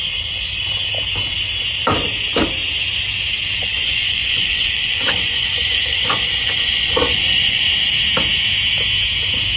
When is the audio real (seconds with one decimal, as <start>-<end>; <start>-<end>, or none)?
0.0-3.6; 7.6-9.6